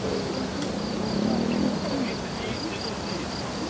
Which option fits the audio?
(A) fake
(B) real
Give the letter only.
B